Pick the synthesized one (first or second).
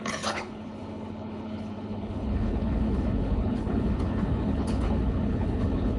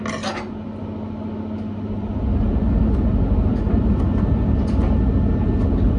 first